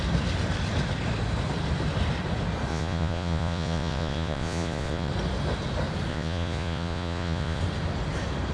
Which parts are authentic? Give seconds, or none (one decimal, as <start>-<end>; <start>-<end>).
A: 0.0-2.7; 5.1-6.1; 7.6-8.5